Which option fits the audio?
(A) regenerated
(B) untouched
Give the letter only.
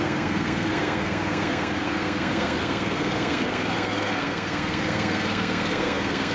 A